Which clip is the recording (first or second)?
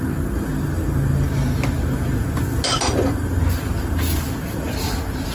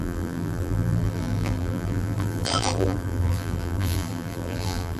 first